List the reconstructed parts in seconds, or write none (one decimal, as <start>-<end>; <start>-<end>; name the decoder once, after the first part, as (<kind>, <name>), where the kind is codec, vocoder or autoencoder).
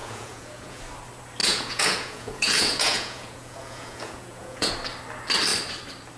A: 0.0-0.8 (vocoder, Vocos); 1.4-4.7